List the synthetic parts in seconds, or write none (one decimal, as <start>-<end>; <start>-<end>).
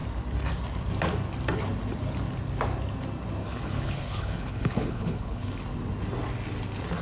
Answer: 3.4-5.5